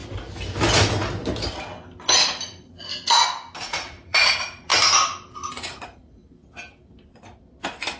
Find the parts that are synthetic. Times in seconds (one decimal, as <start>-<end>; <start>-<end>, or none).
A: 3.6-4.7; 5.5-6.2